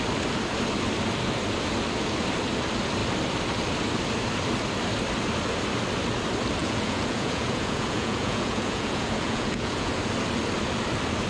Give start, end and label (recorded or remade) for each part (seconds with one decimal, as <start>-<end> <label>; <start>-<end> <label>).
0.0-6.6 recorded; 6.6-9.9 remade; 9.9-11.3 recorded